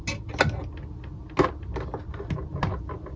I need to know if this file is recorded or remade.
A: recorded